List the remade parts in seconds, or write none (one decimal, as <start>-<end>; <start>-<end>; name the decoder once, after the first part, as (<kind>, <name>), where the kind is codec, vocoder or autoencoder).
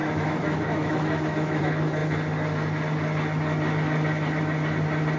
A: 0.0-1.6 (autoencoder, DAC-VAE)